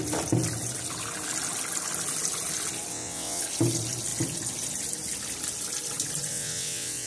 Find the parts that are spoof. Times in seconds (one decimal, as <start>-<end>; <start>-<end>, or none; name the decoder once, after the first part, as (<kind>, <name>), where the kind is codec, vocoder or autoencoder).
2.9-3.4 (vocoder, WaveNeXt); 6.3-7.1